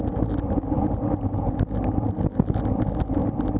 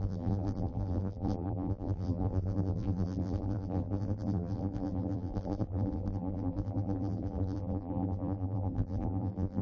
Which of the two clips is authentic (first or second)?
first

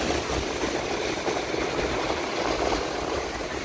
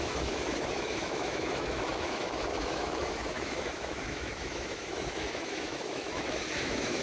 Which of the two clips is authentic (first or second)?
first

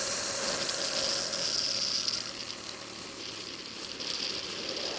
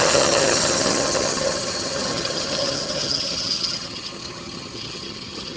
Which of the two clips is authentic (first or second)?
first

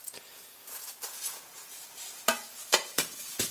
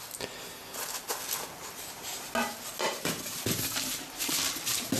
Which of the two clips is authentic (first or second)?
second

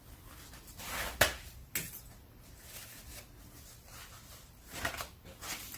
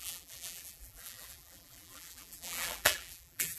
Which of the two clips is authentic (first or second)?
first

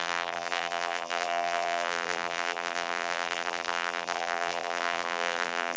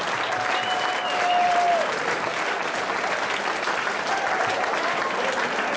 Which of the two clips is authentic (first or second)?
second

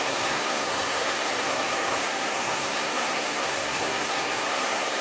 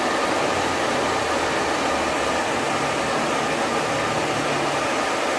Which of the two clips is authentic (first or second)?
second